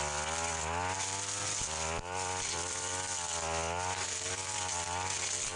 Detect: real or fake real